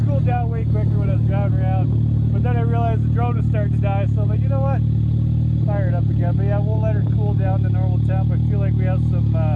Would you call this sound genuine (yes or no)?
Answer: yes